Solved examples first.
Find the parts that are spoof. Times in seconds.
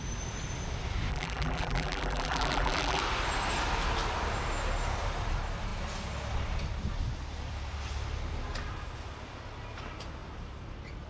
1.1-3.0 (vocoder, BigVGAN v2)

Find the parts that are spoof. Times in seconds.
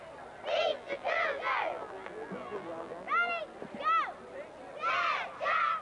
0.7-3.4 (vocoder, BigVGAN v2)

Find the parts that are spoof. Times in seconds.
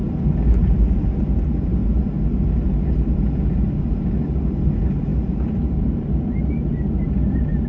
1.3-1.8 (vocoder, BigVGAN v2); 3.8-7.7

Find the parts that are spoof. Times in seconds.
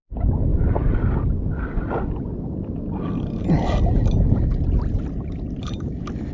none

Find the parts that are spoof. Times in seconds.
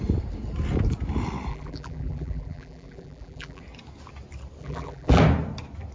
1.5-3.6 (vocoder, BigVGAN v2); 4.6-5.2